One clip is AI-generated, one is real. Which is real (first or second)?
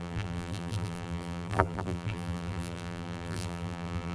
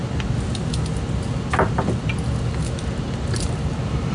second